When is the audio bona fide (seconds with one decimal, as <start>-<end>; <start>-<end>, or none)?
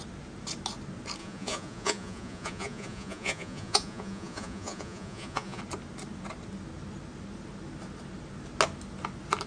0.0-1.2; 5.6-9.5